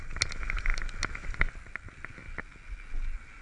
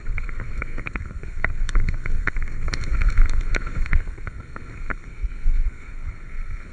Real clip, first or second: first